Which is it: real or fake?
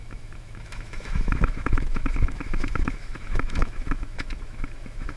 fake